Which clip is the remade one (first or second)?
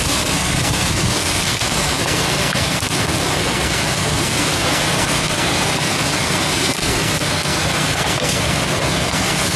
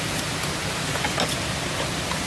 first